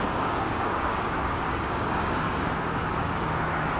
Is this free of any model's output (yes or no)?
no